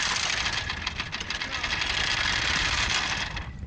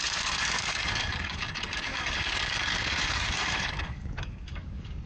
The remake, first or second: second